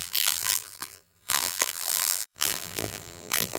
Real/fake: fake